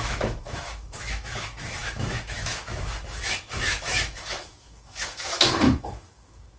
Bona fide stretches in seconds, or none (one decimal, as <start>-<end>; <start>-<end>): none